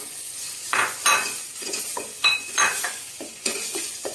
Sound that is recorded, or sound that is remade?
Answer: remade